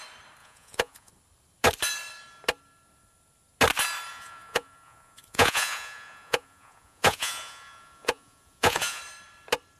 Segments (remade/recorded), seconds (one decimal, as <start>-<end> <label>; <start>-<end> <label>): 0.0-0.4 recorded; 0.4-1.1 remade; 1.1-4.1 recorded; 4.1-9.0 remade; 9.0-9.8 recorded